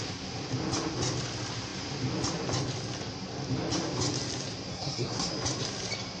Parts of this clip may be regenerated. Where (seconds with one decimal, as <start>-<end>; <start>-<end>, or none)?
4.7-5.3